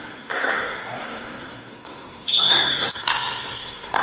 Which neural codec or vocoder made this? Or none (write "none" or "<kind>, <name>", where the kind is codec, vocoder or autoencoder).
codec, SNAC